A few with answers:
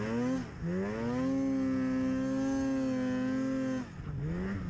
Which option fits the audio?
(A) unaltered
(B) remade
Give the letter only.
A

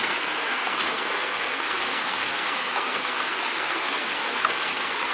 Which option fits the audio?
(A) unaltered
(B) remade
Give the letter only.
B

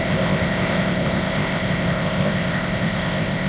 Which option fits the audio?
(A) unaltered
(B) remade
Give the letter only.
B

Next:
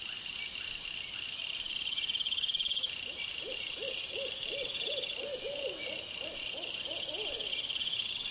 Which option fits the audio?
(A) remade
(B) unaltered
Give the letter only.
A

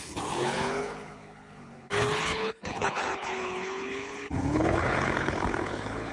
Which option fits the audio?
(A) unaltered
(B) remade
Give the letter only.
B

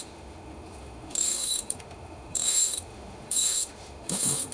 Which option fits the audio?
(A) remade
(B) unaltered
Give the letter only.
A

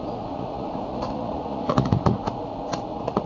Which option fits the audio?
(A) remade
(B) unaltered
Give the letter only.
A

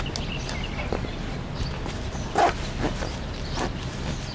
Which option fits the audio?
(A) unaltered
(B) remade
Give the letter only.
A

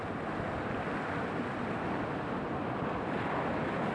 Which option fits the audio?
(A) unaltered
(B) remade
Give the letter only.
A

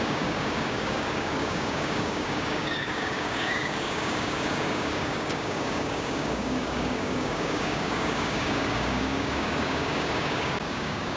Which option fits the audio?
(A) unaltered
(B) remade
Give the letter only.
B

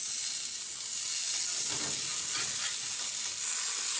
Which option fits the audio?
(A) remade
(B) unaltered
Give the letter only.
B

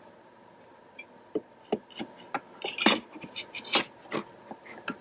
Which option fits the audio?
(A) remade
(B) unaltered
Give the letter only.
B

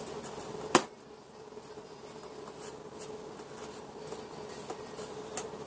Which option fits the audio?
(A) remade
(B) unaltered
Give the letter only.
B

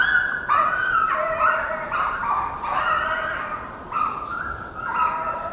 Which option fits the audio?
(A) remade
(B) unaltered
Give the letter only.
B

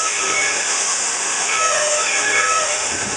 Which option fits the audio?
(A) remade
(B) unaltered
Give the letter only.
A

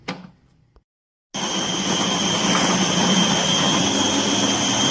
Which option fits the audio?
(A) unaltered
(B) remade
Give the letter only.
A